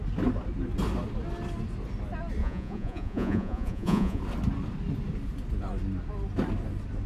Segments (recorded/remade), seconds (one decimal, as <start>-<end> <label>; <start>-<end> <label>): 0.0-2.4 recorded; 2.4-4.2 remade; 4.2-7.1 recorded

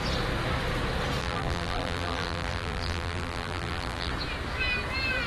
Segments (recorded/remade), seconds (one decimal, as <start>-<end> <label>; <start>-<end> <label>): 0.0-1.2 recorded; 1.2-4.1 remade; 4.1-5.3 recorded

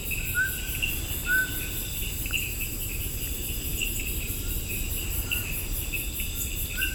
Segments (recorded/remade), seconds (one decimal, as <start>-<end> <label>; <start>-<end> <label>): 0.0-6.9 recorded

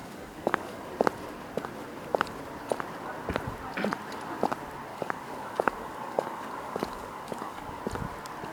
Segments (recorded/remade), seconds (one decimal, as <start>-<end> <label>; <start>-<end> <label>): 0.0-0.9 remade; 0.9-4.9 recorded; 4.9-7.8 remade; 7.8-8.5 recorded

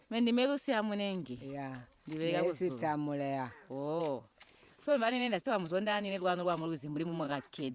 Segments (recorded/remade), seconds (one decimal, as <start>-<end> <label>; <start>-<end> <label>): 0.0-4.4 recorded; 4.4-7.7 remade